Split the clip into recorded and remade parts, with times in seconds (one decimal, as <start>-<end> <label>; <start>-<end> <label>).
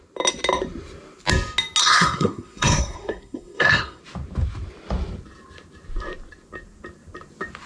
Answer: 0.0-1.8 recorded; 1.8-4.0 remade; 4.0-7.7 recorded